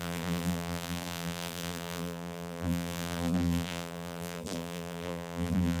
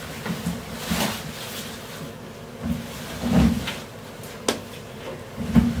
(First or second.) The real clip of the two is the second